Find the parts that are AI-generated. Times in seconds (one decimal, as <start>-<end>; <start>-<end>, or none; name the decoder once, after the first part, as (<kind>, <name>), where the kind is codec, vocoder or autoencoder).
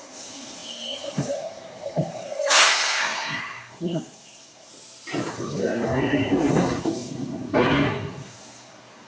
0.0-4.7 (codec, SNAC); 5.3-9.1